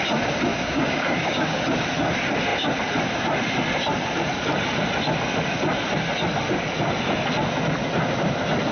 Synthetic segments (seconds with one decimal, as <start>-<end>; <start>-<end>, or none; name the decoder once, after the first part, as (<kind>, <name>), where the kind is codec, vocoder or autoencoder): 0.5-1.6 (codec, DAC)